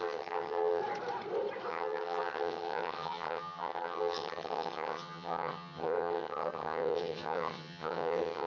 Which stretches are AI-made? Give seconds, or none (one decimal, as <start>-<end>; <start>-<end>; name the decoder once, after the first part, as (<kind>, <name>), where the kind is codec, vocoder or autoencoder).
0.0-0.8 (vocoder, HiFi-GAN); 1.7-8.5